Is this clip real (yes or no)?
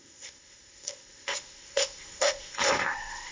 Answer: no